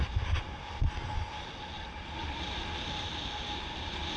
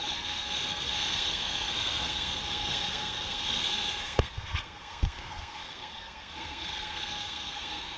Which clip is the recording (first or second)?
first